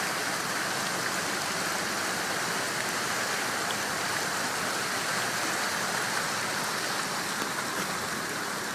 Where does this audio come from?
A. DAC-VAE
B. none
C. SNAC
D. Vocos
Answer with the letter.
B